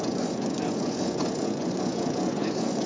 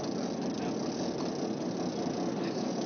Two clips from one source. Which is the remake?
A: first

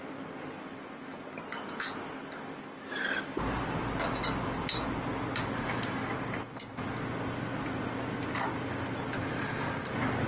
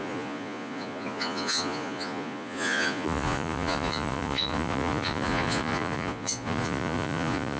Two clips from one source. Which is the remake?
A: second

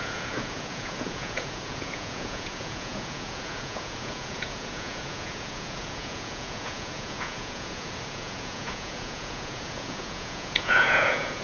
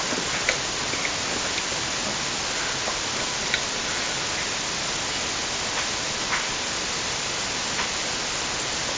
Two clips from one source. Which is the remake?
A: first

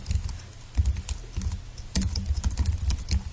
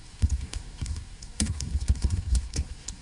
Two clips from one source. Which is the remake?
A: second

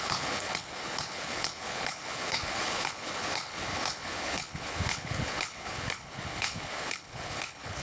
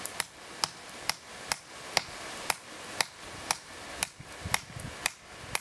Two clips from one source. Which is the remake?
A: first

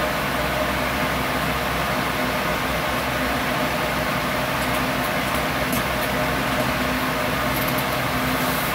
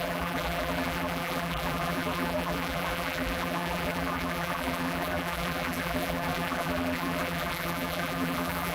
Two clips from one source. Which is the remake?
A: second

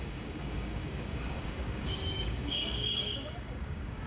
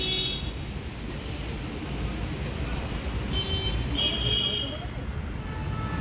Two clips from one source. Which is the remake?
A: first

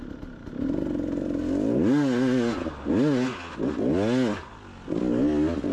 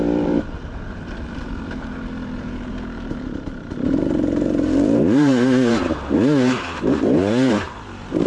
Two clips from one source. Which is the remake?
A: second